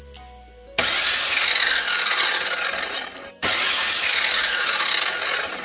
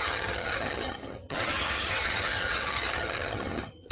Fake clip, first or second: second